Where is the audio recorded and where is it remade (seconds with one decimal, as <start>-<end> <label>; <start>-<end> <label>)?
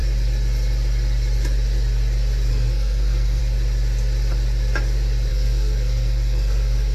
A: 0.0-2.5 recorded; 2.5-3.4 remade; 3.4-5.3 recorded; 5.3-6.9 remade